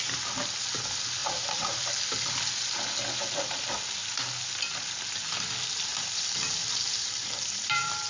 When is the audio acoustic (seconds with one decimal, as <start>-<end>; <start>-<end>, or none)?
0.0-1.2; 1.9-5.9